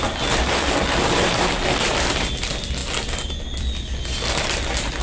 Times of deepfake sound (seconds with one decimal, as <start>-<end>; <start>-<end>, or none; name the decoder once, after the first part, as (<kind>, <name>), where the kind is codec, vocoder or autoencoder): none